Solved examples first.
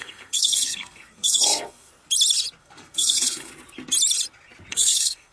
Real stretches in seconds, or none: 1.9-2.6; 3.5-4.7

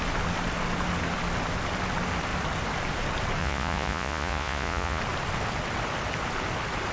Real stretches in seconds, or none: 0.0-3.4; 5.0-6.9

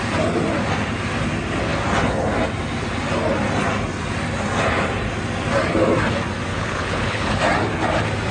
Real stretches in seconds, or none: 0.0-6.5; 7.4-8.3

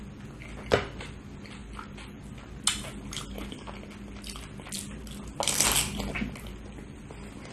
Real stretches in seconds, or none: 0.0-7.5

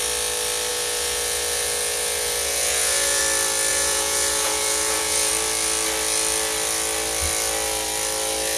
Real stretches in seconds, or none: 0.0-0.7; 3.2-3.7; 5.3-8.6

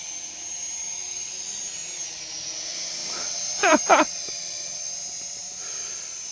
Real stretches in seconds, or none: 1.8-2.5